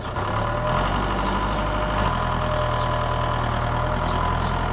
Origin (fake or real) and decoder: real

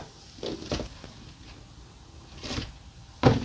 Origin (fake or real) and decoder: real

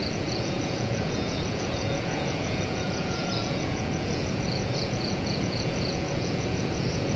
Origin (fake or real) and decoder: fake, vocoder, Vocos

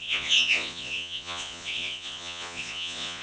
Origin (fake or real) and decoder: fake, vocoder, Vocos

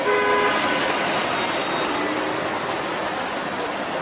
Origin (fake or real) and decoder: real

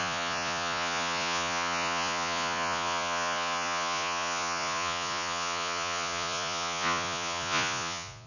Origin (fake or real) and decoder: fake, vocoder, Vocos